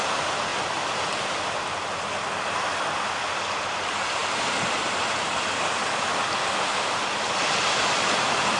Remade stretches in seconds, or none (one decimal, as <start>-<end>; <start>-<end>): none